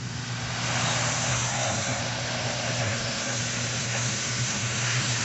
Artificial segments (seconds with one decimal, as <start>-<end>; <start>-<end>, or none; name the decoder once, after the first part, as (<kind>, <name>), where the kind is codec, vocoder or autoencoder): 1.3-2.0 (codec, SNAC); 2.8-3.4; 3.8-5.2